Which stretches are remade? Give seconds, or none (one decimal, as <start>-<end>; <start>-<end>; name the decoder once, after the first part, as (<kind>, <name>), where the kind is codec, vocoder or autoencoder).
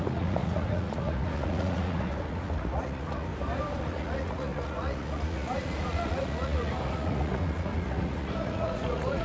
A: 0.0-3.3 (vocoder, Vocos); 3.8-9.2